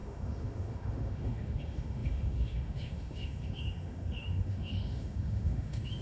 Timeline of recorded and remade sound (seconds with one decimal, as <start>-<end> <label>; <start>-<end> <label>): 0.0-6.0 remade